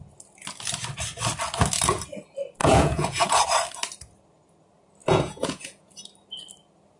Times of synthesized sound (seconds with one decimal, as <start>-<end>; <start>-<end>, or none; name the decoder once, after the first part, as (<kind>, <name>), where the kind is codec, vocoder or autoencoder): 2.6-3.4 (vocoder, Vocos); 5.0-5.9